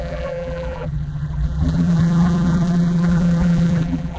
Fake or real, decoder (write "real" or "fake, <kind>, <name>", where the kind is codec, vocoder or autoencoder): fake, vocoder, BigVGAN v2